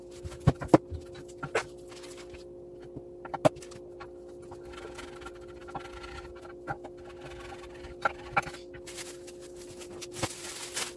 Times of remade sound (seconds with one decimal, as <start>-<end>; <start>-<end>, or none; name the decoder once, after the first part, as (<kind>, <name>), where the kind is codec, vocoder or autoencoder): none